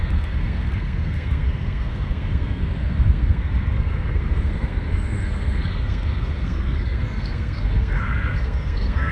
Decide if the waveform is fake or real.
fake